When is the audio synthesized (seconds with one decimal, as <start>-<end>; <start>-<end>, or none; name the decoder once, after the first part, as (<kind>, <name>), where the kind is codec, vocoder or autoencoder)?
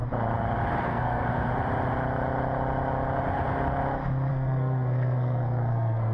0.8-1.5 (codec, SNAC); 4.3-6.1